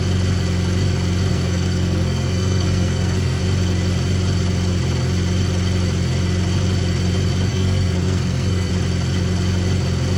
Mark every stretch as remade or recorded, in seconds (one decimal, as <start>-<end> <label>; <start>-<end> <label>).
0.0-1.3 recorded; 1.3-3.4 remade; 3.4-7.5 recorded; 7.5-8.7 remade; 8.7-10.2 recorded